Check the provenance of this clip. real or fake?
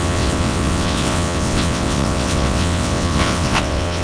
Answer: fake